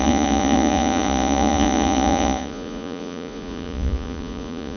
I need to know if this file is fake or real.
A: fake